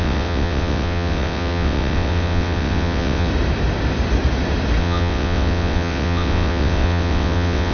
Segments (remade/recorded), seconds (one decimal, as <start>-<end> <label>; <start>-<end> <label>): 0.0-3.3 remade; 3.3-4.8 recorded; 4.8-7.7 remade